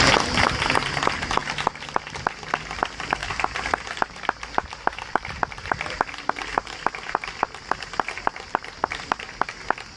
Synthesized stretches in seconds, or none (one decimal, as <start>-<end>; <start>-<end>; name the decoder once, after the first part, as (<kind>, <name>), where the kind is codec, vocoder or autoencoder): none